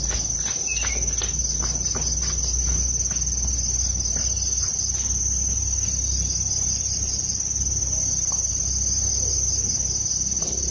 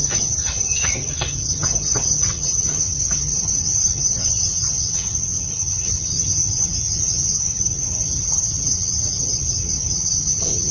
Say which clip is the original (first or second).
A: first